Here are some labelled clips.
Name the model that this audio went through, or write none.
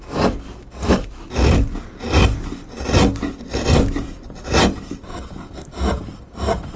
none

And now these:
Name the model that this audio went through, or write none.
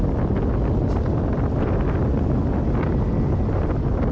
none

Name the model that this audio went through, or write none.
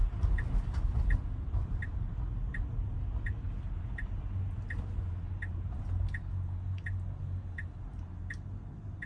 none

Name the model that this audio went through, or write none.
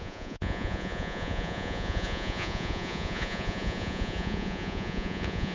vocoder, Vocos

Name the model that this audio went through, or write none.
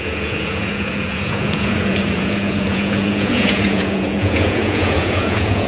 vocoder, Vocos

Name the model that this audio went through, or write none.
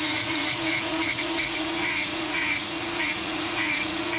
vocoder, Vocos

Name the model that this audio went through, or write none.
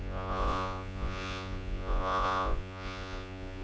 vocoder, Vocos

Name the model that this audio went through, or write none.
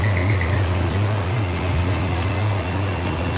vocoder, Vocos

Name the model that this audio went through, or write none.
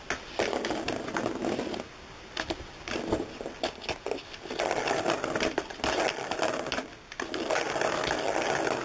none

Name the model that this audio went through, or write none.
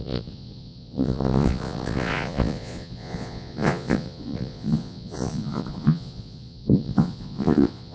vocoder, Vocos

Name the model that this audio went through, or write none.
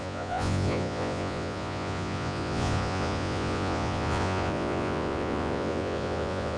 vocoder, Vocos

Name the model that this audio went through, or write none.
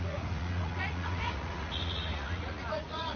vocoder, Vocos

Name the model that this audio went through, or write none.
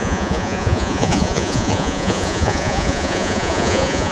vocoder, Vocos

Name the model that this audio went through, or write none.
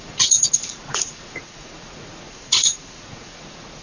vocoder, Vocos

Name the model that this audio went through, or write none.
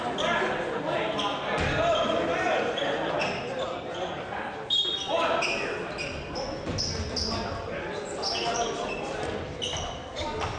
none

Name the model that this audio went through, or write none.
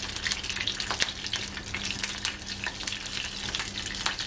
none